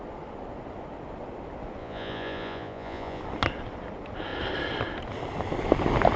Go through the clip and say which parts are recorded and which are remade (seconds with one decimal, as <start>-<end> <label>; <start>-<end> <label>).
0.0-1.8 recorded; 1.8-3.2 remade; 3.2-6.2 recorded